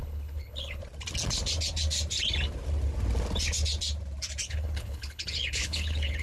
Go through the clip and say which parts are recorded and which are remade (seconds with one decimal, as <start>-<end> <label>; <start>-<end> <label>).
0.0-0.8 remade; 0.8-4.5 recorded; 4.5-6.2 remade